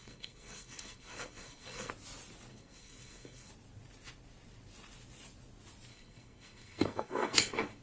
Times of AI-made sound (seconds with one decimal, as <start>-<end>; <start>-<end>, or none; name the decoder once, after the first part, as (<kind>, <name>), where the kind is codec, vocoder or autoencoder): 0.0-1.9 (codec, SNAC); 2.5-3.5; 5.9-7.8